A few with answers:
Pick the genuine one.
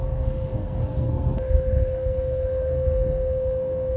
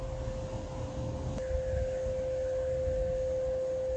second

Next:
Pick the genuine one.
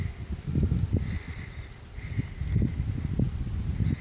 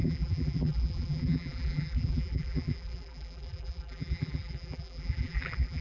first